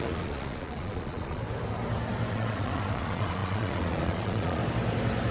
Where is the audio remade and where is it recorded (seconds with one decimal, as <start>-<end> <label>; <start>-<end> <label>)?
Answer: 0.0-1.4 remade; 1.4-2.3 recorded; 2.3-4.6 remade; 4.6-5.3 recorded

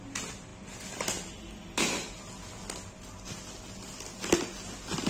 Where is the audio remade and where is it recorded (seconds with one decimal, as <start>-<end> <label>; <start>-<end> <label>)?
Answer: 0.0-5.1 recorded

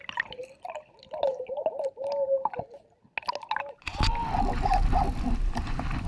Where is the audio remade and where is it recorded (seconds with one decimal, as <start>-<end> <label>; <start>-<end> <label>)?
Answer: 0.0-6.1 recorded